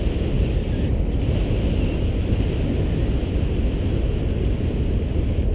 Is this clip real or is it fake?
real